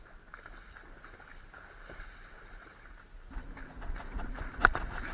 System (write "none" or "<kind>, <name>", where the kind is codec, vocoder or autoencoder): none